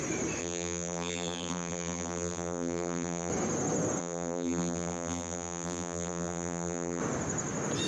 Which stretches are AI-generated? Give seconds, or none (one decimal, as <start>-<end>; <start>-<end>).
0.4-3.3; 4.0-7.0